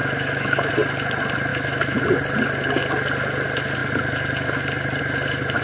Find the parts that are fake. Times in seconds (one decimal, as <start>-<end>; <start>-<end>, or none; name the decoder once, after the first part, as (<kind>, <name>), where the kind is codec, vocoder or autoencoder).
0.0-0.7 (autoencoder, DAC-VAE); 1.5-2.0